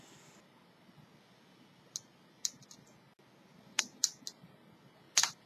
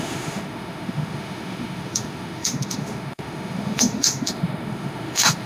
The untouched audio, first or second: first